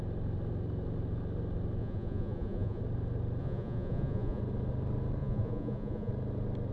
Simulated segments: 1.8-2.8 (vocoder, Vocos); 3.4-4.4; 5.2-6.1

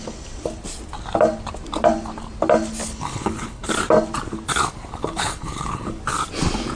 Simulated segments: 2.8-3.7 (codec, HILCodec); 5.0-6.0

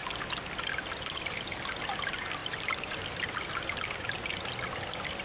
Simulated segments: none

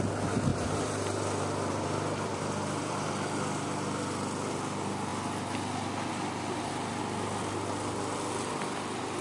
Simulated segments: 0.5-3.1 (vocoder, BigVGAN v2)

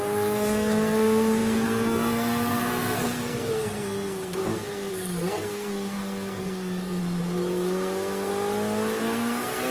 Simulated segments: 0.0-7.0 (codec, SNAC); 7.5-8.3; 9.0-9.7

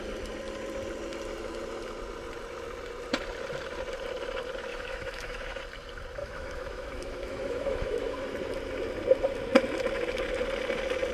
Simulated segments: 4.7-5.6 (autoencoder, DAC-VAE); 6.2-8.2

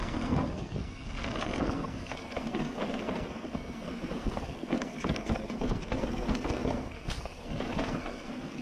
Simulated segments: 0.0-8.6 (codec, SNAC)